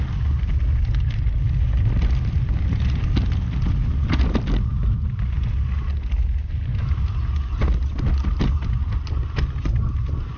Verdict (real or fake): real